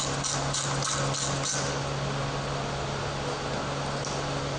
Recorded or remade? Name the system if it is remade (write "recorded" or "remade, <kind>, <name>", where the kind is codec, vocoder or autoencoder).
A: recorded